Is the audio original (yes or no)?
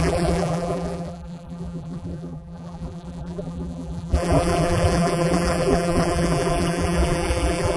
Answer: no